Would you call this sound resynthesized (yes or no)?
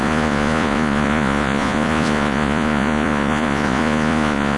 yes